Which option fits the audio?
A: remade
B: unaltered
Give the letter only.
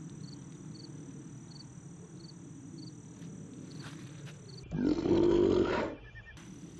B